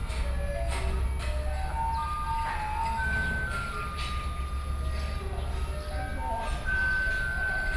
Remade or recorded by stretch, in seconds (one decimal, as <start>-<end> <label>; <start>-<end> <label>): 0.0-7.8 recorded